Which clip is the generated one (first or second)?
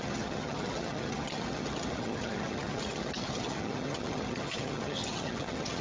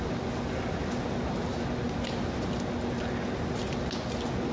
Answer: first